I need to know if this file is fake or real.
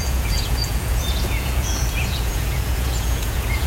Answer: fake